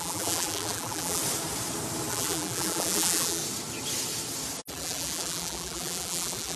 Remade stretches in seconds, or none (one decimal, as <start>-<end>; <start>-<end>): 0.0-1.2; 2.1-3.4; 4.7-6.6